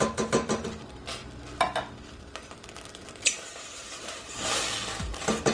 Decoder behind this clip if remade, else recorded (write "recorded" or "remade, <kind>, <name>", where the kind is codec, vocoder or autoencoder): recorded